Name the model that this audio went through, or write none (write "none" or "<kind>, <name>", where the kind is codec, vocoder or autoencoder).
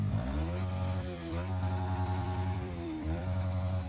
vocoder, BigVGAN v2